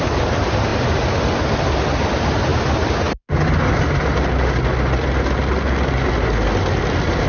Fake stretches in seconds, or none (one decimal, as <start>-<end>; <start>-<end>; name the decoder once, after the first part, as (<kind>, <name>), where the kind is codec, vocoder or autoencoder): none